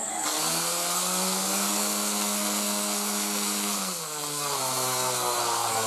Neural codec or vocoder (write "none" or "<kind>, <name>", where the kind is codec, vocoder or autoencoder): codec, SNAC